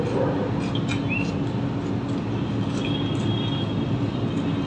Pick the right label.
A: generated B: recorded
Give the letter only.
B